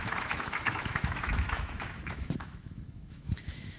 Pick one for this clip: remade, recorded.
remade